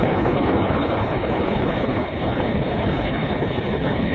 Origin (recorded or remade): remade